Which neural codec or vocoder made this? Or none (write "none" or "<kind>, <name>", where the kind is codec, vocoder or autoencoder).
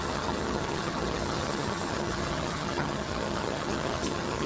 vocoder, HiFi-GAN